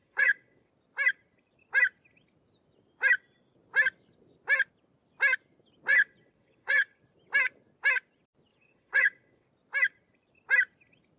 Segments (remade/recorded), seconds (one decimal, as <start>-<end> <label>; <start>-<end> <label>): 0.0-0.7 remade; 0.7-5.9 recorded; 5.9-7.0 remade; 7.0-8.5 recorded; 8.5-9.5 remade; 9.5-11.2 recorded